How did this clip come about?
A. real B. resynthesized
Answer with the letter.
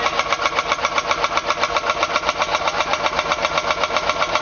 A